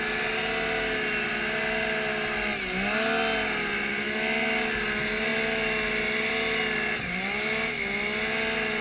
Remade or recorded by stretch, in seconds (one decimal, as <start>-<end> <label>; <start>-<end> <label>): 0.0-8.8 recorded